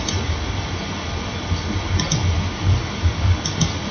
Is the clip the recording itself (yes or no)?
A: yes